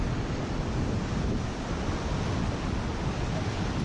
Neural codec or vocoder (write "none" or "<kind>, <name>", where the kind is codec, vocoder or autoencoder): none